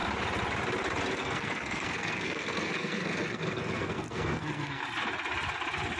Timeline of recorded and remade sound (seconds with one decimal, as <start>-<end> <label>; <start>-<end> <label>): 0.0-1.2 recorded; 1.2-4.8 remade; 4.8-6.0 recorded